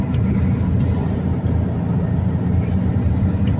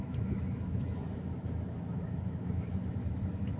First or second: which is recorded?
first